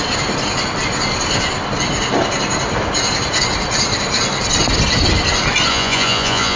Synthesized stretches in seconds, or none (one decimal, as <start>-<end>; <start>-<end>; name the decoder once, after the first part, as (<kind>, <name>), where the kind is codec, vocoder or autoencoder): 5.7-6.6 (vocoder, Vocos)